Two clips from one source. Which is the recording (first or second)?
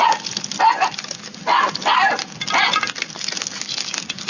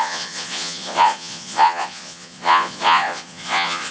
first